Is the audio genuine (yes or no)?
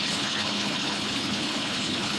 no